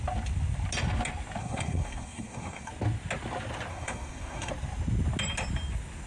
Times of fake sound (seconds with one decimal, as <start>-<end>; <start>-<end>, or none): 1.4-2.7; 3.7-4.5